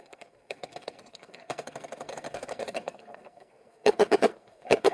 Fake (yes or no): yes